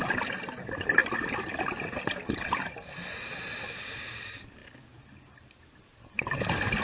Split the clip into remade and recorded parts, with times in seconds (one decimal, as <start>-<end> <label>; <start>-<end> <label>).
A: 0.0-6.8 recorded